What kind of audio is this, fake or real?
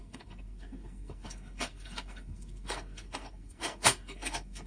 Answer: fake